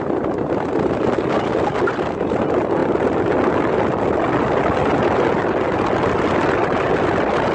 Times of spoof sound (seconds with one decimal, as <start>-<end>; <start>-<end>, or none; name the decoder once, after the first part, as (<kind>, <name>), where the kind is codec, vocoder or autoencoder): none